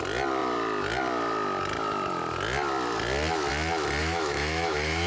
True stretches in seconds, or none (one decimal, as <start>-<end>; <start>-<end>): 0.0-4.0